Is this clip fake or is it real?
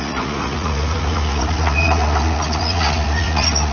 fake